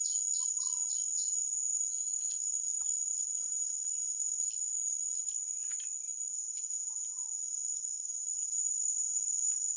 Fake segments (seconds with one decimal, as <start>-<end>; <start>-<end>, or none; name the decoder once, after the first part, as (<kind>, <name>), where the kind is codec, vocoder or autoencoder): 6.3-7.2 (vocoder, Vocos)